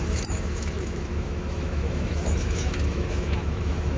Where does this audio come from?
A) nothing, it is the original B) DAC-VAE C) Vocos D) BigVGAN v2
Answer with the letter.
B